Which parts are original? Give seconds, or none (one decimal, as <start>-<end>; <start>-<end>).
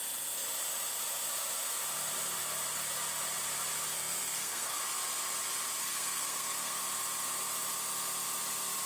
0.0-3.9; 4.8-5.8; 6.8-8.9